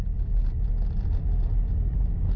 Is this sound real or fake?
real